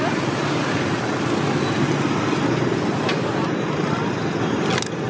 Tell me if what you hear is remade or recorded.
recorded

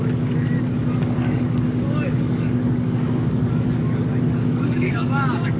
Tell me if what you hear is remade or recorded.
remade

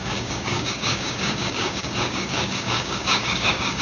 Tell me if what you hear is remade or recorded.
remade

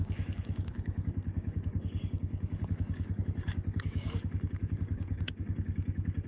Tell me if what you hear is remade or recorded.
remade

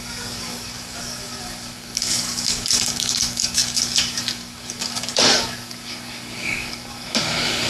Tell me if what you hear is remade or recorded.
remade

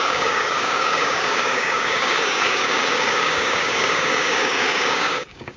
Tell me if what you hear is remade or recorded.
remade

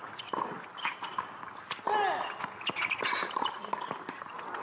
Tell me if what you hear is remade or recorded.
recorded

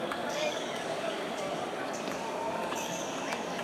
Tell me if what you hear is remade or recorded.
remade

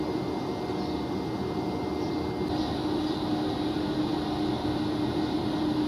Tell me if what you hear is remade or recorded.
recorded